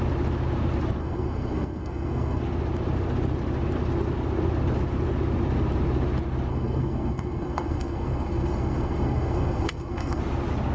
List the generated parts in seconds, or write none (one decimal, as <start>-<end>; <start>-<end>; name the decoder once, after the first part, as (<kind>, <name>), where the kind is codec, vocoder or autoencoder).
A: 1.0-2.4 (codec, SNAC); 6.5-10.2